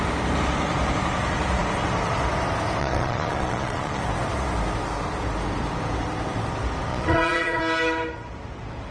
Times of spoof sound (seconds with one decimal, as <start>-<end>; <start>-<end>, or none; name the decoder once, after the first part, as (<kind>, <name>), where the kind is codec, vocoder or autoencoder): 2.8-4.0 (vocoder, Vocos); 6.9-7.6